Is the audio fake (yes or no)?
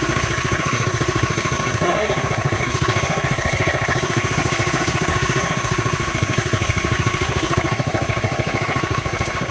yes